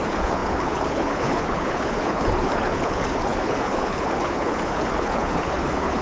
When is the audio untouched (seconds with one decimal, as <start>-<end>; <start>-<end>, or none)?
none